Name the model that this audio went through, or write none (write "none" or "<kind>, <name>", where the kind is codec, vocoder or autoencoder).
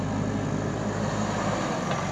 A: none